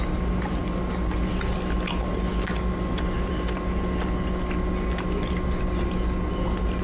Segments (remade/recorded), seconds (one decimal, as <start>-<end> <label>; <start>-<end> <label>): 0.0-6.8 recorded